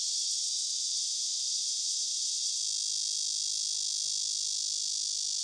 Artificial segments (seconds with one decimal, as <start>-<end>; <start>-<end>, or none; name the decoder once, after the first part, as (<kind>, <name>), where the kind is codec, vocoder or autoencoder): 0.0-2.6 (vocoder, WaveNeXt)